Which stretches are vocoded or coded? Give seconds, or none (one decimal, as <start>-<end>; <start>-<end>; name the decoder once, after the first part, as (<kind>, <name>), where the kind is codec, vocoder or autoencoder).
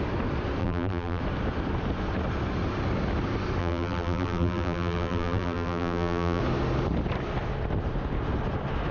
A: 0.6-1.2 (vocoder, BigVGAN v2); 3.6-6.4